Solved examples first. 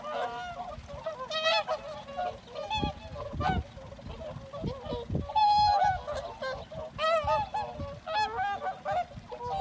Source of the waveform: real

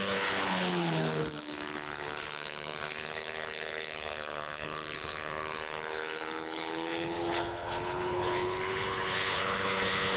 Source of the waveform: fake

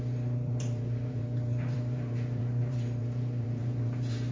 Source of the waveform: fake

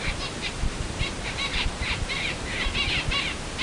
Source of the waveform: fake